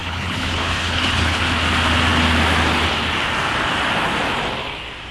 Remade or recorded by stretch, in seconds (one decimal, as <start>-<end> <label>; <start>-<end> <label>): 0.0-1.4 remade; 1.4-5.1 recorded